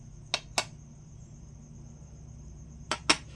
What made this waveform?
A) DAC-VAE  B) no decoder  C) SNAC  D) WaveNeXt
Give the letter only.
B